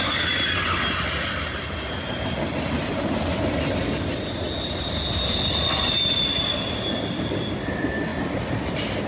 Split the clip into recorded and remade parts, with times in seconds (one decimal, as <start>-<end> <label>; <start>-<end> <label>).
0.0-9.1 recorded